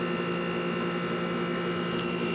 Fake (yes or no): no